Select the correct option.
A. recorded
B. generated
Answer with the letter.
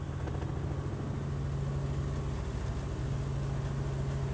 A